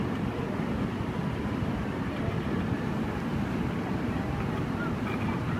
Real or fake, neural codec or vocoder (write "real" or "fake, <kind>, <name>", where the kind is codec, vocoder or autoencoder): real